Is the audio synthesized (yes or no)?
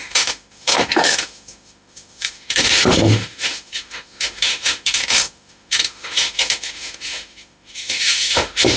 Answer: yes